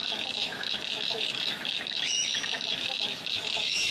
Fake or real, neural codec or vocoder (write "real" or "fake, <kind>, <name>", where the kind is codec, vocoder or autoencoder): fake, autoencoder, DAC-VAE